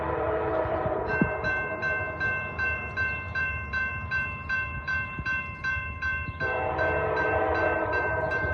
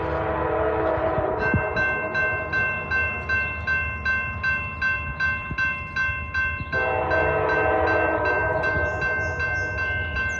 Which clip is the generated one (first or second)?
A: first